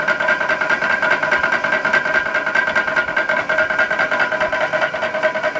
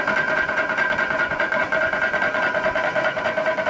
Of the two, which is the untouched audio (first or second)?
first